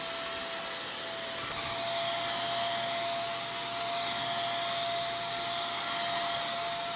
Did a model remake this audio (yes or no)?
no